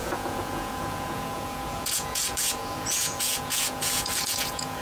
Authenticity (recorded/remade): remade